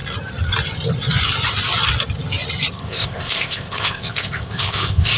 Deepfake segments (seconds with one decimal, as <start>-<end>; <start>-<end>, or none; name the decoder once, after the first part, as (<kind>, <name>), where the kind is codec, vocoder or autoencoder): 2.7-5.2 (codec, ZipCodec)